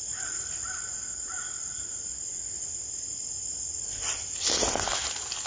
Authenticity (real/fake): real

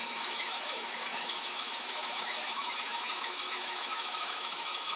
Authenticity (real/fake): fake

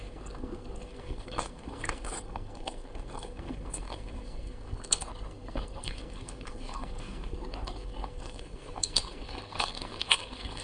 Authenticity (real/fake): fake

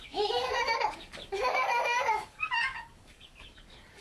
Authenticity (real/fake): fake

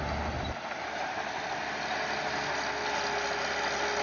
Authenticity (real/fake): real